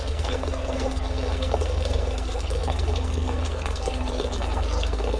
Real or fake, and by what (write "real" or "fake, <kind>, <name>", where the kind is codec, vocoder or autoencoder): fake, codec, SNAC